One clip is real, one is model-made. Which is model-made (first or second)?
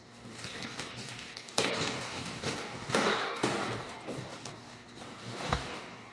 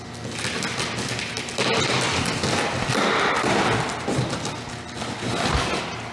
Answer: first